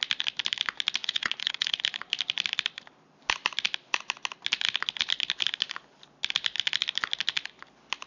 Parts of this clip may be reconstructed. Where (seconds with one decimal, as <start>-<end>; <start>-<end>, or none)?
1.0-1.8